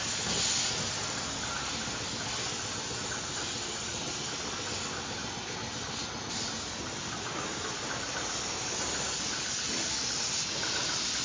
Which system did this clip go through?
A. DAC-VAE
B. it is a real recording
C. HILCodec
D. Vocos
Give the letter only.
B